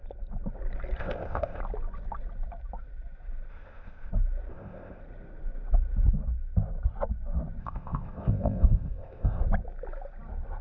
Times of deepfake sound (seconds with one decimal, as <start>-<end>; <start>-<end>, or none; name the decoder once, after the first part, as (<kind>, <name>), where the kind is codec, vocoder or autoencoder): 1.0-1.6 (codec, ZipCodec); 3.5-4.1; 4.5-5.0; 7.6-9.4